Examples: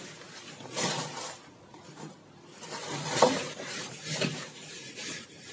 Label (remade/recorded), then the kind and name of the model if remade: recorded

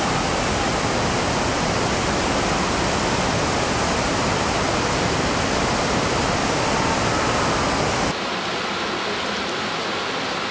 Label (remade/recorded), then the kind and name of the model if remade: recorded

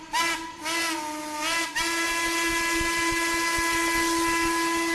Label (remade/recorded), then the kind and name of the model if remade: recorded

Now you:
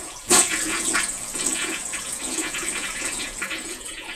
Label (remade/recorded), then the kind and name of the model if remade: remade, vocoder, Vocos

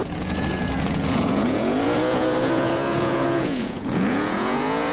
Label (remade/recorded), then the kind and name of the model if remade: remade, vocoder, Vocos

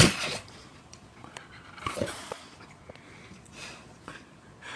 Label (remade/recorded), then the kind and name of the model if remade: remade, vocoder, Vocos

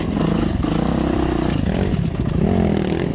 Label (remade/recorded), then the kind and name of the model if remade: recorded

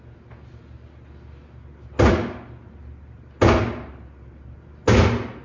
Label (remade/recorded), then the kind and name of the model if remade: recorded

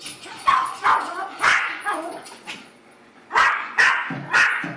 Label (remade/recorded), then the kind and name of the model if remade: remade, vocoder, Vocos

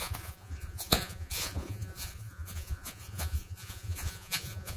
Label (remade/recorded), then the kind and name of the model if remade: remade, vocoder, Vocos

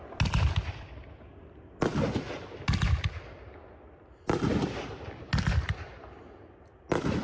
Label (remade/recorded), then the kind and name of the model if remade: recorded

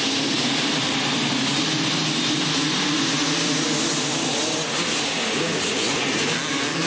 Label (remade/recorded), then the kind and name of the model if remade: recorded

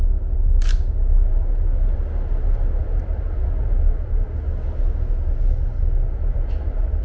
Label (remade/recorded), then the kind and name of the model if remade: recorded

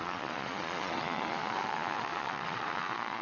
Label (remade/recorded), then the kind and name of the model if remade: remade, vocoder, Vocos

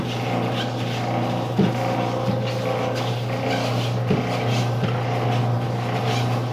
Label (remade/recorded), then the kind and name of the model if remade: recorded